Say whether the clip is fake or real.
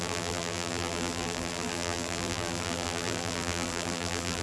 fake